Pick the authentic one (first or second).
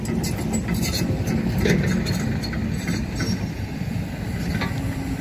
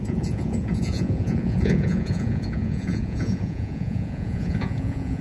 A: first